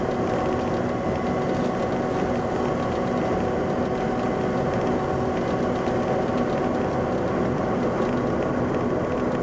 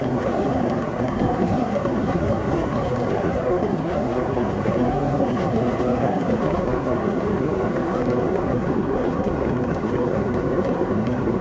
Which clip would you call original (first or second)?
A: first